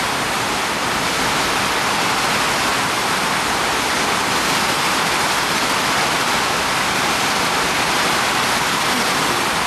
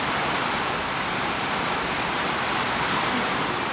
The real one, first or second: first